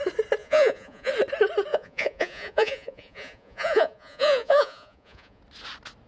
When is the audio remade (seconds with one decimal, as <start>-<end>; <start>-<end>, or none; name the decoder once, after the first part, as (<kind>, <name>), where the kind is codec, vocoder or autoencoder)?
0.4-1.1 (vocoder, Vocos); 1.7-5.4